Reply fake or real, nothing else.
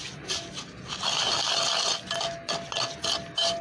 real